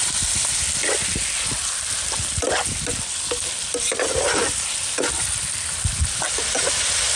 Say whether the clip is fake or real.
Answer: real